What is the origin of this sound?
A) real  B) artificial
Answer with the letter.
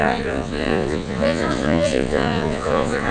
B